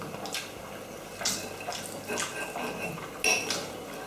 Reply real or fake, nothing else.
real